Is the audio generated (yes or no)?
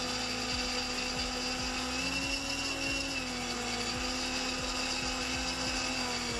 no